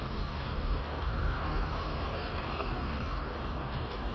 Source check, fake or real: fake